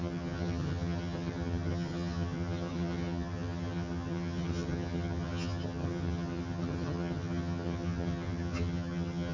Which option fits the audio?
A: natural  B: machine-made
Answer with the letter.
B